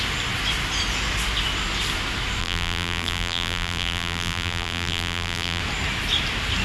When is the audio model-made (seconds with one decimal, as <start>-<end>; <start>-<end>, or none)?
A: 2.4-5.6